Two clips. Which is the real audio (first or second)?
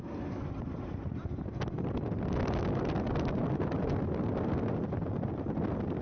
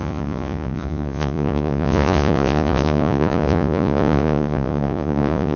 first